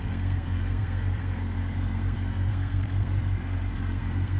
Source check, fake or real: fake